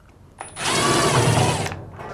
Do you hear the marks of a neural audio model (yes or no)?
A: no